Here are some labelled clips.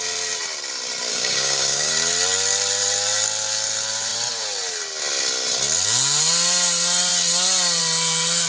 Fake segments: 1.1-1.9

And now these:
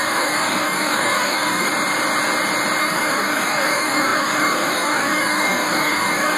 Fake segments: 0.0-1.7; 2.8-6.4

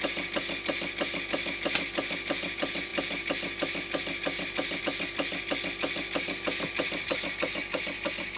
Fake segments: none

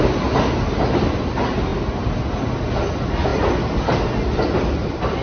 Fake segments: none

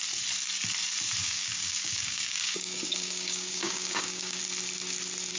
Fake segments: 1.2-4.4